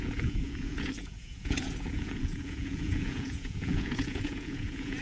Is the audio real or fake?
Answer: fake